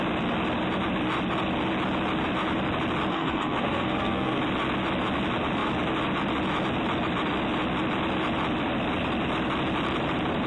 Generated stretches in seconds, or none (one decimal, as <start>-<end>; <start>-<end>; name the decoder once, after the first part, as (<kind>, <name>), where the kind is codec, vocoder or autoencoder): 3.1-4.4 (codec, SNAC)